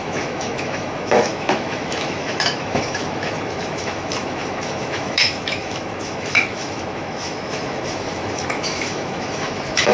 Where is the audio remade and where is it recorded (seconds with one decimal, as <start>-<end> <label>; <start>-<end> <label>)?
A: 0.0-9.9 remade